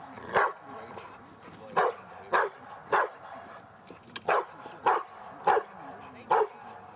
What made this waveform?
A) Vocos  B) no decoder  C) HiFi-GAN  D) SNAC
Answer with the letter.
B